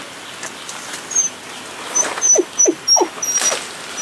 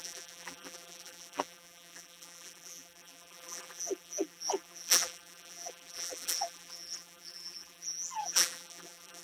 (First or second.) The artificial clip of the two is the second